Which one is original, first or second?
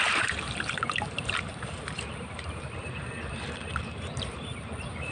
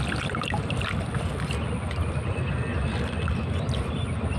second